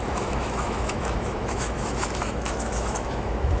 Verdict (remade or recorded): remade